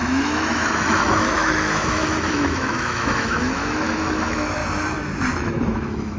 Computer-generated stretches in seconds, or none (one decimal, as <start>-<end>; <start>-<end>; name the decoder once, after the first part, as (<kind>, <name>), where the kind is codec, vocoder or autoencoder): 0.0-4.6 (autoencoder, DAC-VAE); 5.3-6.2